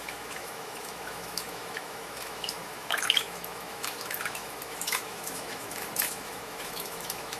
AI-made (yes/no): yes